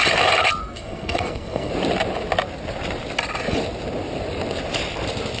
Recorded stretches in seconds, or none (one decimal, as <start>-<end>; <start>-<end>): 0.0-0.6; 1.7-5.4